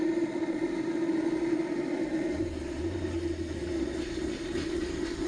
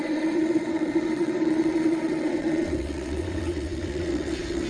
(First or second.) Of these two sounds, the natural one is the first